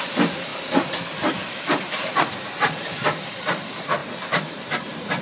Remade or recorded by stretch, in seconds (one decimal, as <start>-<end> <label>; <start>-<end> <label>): 0.0-0.5 remade; 0.5-1.5 recorded; 1.5-5.2 remade